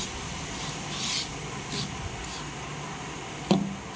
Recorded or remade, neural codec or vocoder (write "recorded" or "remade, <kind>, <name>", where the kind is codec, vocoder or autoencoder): recorded